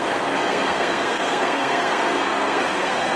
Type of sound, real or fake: fake